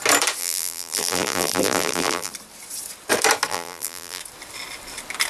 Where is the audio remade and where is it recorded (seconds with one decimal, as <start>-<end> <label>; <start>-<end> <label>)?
0.0-0.4 recorded; 0.4-2.3 remade; 2.3-3.5 recorded; 3.5-4.2 remade; 4.2-5.3 recorded